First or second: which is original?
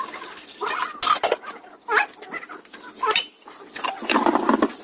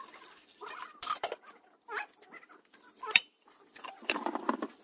first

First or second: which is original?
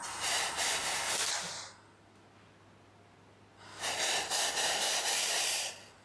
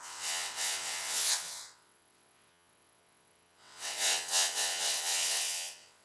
first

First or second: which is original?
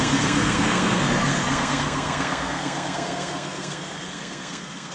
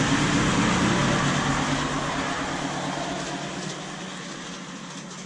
second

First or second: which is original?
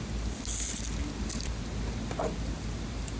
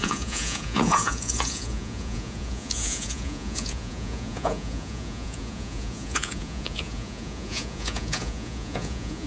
first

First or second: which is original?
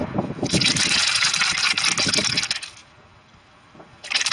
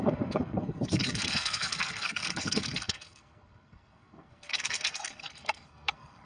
first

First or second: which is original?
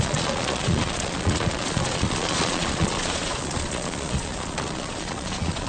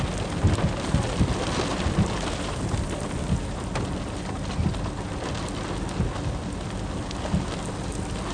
second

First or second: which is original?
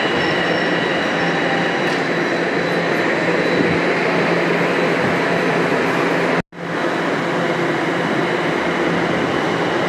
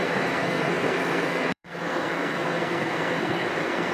first